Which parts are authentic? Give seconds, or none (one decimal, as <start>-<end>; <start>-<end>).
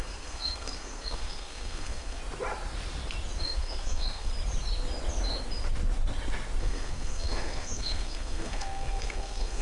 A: 2.2-3.4; 4.3-6.6